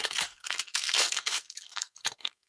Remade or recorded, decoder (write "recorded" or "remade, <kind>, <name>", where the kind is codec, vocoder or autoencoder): remade, codec, SNAC